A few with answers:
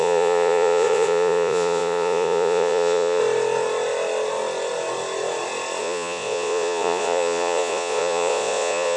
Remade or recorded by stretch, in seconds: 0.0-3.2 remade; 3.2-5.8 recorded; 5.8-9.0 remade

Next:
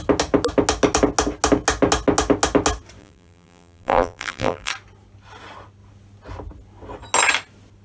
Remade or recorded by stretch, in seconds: 0.0-3.0 recorded; 3.0-4.7 remade; 4.7-7.8 recorded

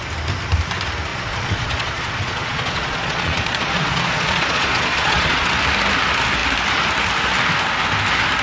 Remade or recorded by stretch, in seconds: 0.0-1.1 recorded; 1.1-5.5 remade; 5.5-8.4 recorded

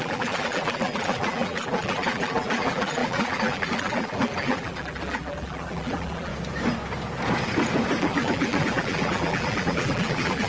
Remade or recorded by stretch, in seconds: 0.0-6.3 remade; 6.3-8.0 recorded; 8.0-10.5 remade

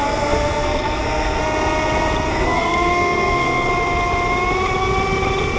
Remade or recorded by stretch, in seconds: 0.0-1.4 remade; 1.4-2.3 recorded; 2.3-3.7 remade; 3.7-5.6 recorded

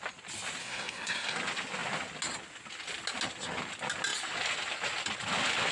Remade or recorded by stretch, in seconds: 0.0-0.6 recorded; 0.6-1.4 remade; 1.4-5.7 recorded

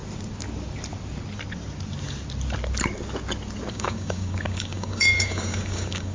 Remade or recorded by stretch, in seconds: 0.0-3.7 recorded; 3.7-6.1 remade

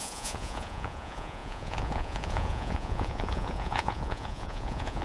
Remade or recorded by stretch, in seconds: 0.0-5.0 remade